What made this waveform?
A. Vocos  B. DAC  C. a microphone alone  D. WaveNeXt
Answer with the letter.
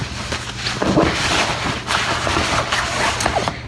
C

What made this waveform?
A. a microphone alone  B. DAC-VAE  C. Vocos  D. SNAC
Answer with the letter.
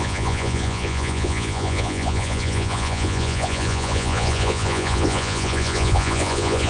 C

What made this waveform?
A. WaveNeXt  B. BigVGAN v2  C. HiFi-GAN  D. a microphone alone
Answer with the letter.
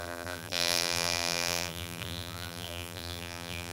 B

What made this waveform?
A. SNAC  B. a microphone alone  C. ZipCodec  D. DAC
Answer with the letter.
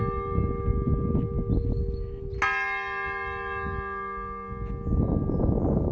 B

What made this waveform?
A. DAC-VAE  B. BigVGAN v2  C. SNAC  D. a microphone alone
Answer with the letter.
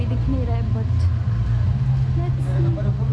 D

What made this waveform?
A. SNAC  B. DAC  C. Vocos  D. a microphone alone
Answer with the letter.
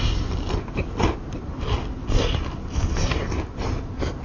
D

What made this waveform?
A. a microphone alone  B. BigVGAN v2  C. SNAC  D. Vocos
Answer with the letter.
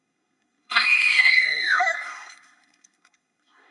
C